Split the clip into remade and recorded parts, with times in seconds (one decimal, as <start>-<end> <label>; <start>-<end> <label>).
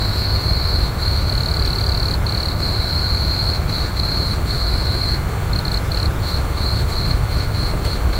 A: 0.0-1.3 remade; 1.3-2.5 recorded; 2.5-5.5 remade; 5.5-6.2 recorded; 6.2-8.2 remade